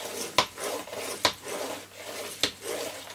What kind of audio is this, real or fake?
real